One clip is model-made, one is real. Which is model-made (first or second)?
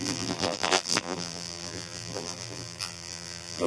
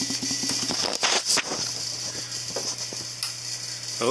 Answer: first